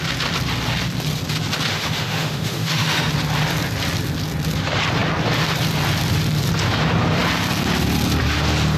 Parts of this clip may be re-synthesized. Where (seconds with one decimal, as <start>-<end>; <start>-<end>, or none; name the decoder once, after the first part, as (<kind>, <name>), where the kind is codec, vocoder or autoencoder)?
1.7-3.1 (autoencoder, DAC-VAE)